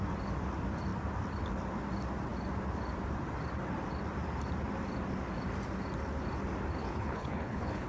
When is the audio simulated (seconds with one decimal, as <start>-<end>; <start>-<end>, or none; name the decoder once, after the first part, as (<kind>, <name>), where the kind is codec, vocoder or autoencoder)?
6.8-7.9 (codec, HILCodec)